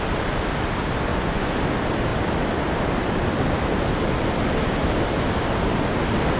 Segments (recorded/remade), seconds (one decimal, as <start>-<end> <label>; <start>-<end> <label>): 0.0-1.1 recorded; 1.1-1.6 remade; 1.6-6.4 recorded